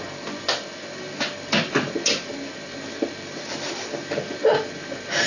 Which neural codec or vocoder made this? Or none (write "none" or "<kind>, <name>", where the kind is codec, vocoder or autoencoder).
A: none